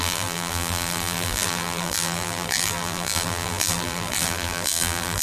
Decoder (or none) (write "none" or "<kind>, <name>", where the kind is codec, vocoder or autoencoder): vocoder, BigVGAN v2